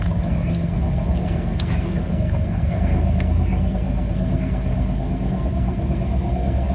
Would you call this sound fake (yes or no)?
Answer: yes